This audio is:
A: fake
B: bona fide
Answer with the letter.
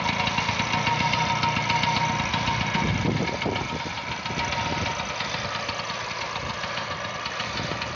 B